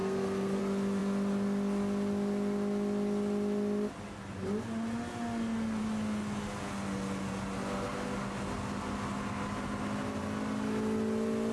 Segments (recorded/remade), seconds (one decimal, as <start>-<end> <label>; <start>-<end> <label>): 0.0-0.6 remade; 0.6-11.5 recorded